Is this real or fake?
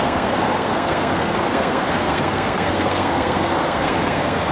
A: fake